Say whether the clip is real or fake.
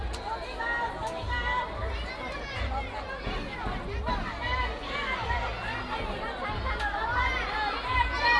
real